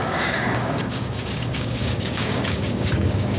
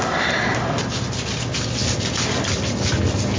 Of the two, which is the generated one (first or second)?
first